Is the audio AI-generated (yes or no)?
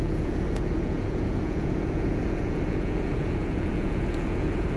yes